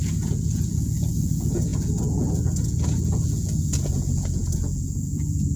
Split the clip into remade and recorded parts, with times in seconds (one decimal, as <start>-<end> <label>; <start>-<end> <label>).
0.0-5.6 remade